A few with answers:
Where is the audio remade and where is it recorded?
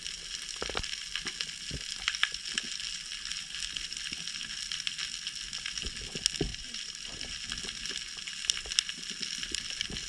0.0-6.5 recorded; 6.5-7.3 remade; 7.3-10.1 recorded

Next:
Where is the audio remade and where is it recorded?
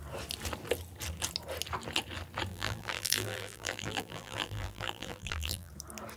0.0-2.5 recorded; 2.5-5.7 remade; 5.7-6.2 recorded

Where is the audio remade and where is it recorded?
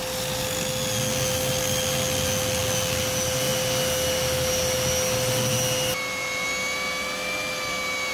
0.0-8.1 recorded